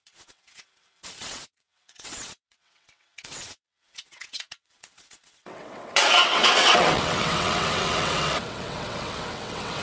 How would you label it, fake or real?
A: fake